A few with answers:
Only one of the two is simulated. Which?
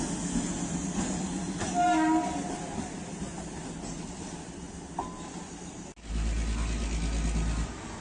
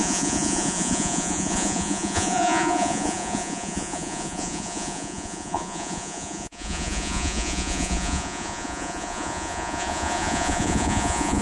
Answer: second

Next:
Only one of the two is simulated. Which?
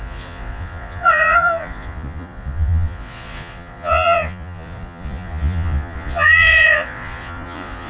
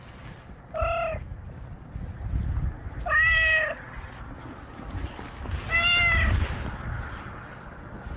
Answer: first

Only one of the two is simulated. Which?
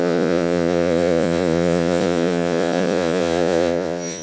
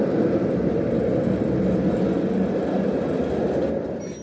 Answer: first